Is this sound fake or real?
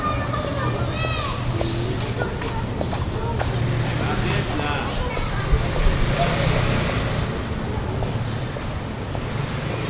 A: real